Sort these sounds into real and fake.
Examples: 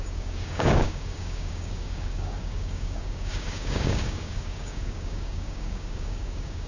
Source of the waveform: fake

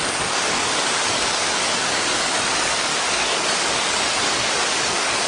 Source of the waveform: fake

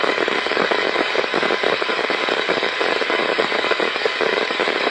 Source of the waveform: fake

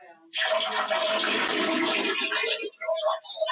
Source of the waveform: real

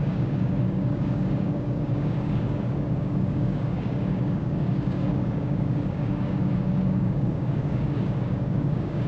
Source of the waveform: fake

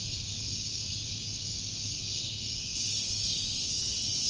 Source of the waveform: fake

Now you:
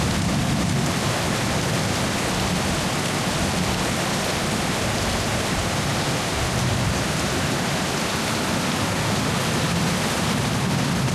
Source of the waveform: real